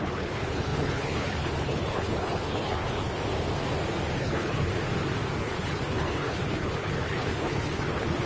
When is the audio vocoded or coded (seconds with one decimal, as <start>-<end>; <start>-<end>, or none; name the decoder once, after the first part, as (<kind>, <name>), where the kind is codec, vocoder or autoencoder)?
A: 0.0-3.2 (codec, HILCodec); 4.2-4.7; 5.4-8.3